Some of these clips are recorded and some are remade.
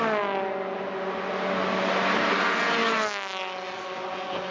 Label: recorded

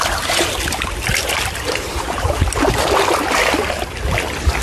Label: recorded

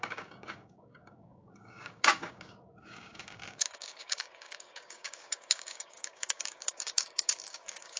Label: remade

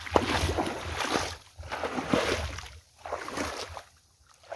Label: recorded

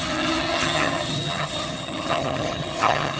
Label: remade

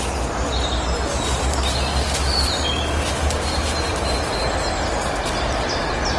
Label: recorded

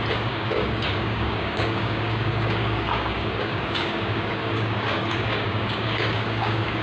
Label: remade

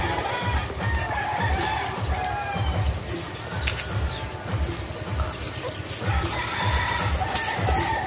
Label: recorded